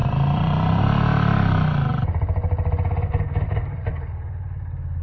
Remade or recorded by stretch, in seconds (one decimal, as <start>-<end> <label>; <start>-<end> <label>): 0.0-0.8 remade; 0.8-1.9 recorded; 1.9-5.0 remade